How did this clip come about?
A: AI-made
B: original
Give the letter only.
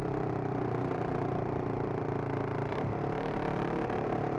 A